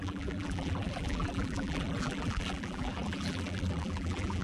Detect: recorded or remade remade